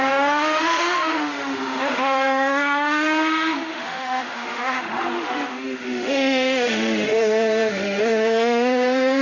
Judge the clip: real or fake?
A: fake